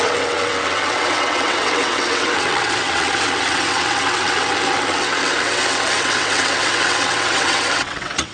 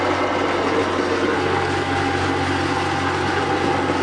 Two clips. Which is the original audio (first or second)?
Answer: second